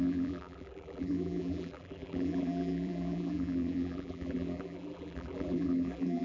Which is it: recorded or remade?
remade